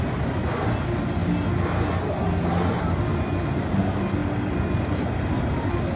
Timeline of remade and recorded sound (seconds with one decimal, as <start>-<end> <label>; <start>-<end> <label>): 0.0-3.3 recorded; 3.3-3.8 remade; 3.8-6.0 recorded